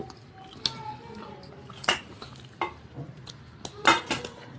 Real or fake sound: real